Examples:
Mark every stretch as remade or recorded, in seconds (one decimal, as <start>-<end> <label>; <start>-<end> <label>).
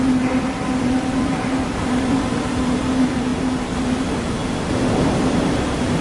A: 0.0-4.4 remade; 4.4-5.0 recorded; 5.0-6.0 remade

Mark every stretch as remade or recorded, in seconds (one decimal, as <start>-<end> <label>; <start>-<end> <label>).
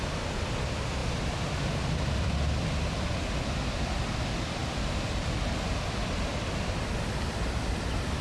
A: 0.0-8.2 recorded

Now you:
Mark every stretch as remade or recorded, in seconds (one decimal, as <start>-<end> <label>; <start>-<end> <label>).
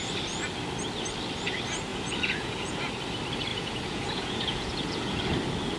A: 0.0-1.9 recorded; 1.9-2.9 remade; 2.9-3.5 recorded; 3.5-5.2 remade; 5.2-5.8 recorded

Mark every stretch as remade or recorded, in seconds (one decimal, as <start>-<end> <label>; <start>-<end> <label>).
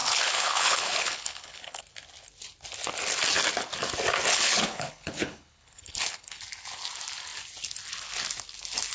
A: 0.0-1.8 remade; 1.8-4.3 recorded; 4.3-6.4 remade; 6.4-8.9 recorded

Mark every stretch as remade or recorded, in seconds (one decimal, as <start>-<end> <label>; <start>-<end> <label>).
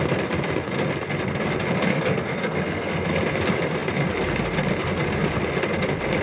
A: 0.0-1.9 recorded; 1.9-3.2 remade; 3.2-6.2 recorded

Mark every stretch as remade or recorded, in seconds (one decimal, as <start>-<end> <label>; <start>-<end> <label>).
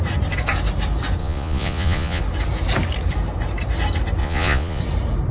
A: 0.0-1.2 recorded; 1.2-2.2 remade; 2.2-4.2 recorded; 4.2-4.8 remade; 4.8-5.3 recorded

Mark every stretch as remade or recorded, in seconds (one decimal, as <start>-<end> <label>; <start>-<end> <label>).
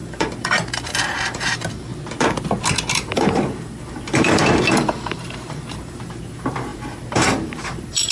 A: 0.0-1.9 remade; 1.9-2.9 recorded; 2.9-8.1 remade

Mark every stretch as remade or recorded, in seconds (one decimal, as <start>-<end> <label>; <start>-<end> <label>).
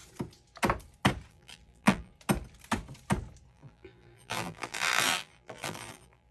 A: 0.0-1.3 recorded; 1.3-2.1 remade; 2.1-3.5 recorded; 3.5-6.3 remade